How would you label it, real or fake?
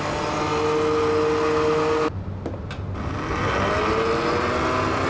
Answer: real